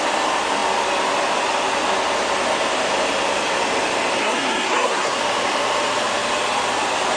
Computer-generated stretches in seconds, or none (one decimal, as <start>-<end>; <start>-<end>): 4.2-5.2